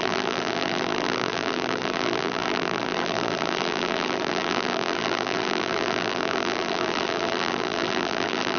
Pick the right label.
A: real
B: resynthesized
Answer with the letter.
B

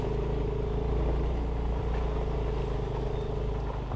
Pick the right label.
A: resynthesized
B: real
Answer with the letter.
B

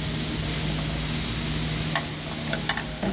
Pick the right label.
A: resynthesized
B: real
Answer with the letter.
B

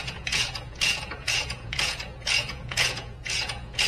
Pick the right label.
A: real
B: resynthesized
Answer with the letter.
B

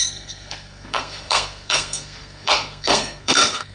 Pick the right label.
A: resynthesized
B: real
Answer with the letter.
A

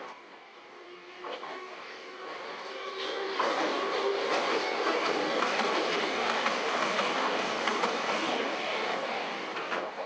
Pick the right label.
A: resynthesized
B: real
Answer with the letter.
A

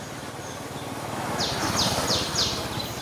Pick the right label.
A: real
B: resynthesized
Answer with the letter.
A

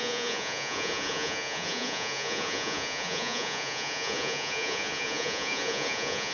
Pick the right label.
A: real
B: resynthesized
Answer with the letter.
B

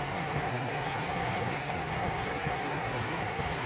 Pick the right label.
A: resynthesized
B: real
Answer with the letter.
A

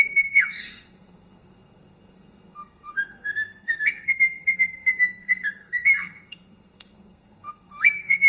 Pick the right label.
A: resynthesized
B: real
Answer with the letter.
A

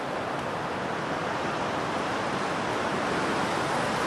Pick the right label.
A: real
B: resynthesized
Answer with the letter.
A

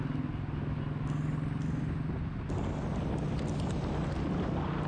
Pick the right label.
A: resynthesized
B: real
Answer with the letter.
B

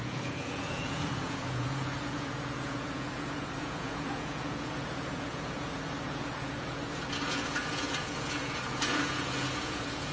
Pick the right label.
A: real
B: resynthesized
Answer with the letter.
B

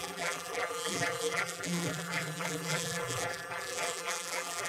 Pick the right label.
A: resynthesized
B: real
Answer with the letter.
A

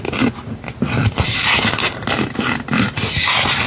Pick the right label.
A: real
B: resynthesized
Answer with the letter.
A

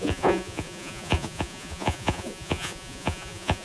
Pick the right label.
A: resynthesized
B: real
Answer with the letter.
A